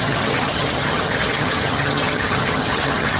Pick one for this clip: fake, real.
fake